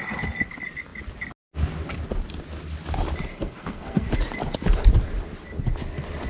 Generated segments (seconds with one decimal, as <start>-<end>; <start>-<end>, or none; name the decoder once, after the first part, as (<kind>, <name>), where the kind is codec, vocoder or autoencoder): 3.3-4.1 (codec, SNAC)